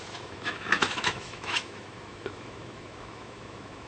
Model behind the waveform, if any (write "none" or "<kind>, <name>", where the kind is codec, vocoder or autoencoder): autoencoder, DAC-VAE